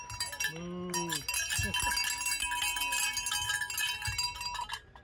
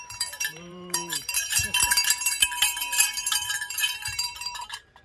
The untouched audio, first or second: first